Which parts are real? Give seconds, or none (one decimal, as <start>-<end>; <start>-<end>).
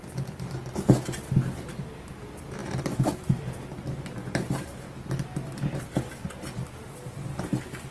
0.0-7.9